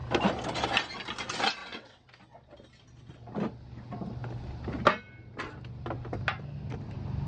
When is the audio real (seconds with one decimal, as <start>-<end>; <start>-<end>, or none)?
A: 0.0-1.6; 2.1-7.3